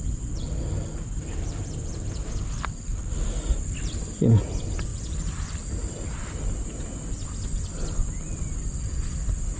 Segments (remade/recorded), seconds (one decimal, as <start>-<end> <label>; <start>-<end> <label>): 0.0-4.9 recorded; 4.9-9.6 remade